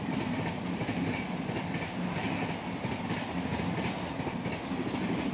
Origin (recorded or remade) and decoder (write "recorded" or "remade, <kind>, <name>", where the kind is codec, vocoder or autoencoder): recorded